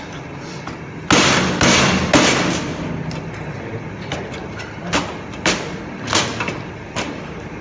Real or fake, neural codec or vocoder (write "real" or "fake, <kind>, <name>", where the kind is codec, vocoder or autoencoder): real